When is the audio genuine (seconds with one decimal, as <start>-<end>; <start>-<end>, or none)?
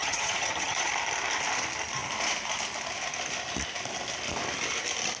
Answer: 0.9-5.2